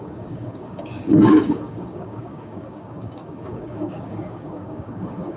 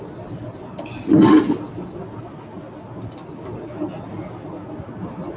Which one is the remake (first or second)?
first